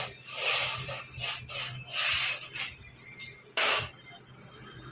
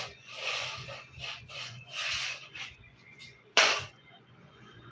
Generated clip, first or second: second